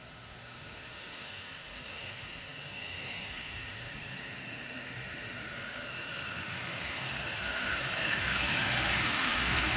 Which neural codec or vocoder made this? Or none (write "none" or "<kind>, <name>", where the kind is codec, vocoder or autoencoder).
autoencoder, DAC-VAE